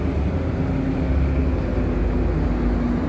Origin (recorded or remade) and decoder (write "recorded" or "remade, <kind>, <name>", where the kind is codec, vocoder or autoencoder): recorded